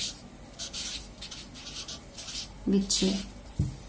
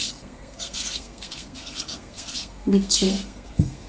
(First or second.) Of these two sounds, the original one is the first